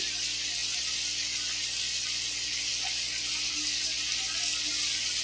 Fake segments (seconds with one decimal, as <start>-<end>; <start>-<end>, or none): none